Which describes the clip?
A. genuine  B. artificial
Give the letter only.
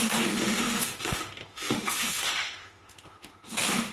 B